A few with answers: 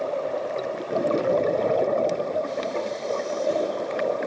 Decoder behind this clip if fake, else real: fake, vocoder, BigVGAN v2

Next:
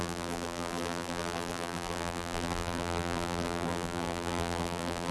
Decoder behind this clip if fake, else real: fake, vocoder, BigVGAN v2